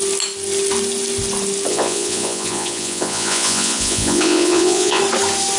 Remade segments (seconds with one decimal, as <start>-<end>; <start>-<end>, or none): 1.7-5.0